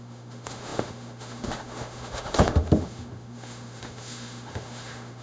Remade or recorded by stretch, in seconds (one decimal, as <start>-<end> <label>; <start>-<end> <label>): 0.0-5.2 remade